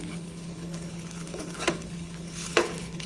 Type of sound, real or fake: fake